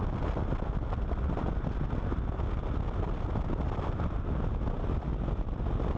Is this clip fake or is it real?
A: real